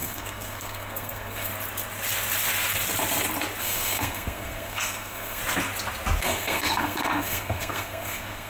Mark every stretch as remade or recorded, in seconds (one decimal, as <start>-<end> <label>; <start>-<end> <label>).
0.0-1.5 remade; 1.5-3.6 recorded; 3.6-5.4 remade; 5.4-6.2 recorded; 6.2-8.5 remade